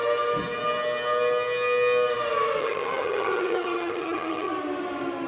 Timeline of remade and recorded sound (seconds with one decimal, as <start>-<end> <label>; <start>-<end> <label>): 0.0-2.6 recorded; 2.6-4.5 remade; 4.5-5.3 recorded